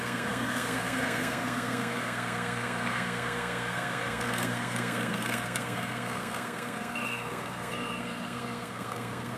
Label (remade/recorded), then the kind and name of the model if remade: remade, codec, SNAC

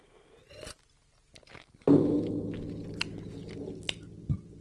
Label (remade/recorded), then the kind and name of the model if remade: recorded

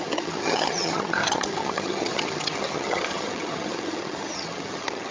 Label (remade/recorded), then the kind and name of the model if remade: remade, vocoder, HiFi-GAN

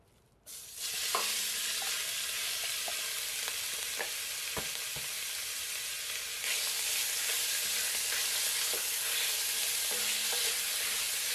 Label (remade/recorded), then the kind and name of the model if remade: recorded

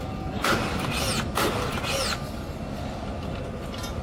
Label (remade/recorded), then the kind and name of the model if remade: recorded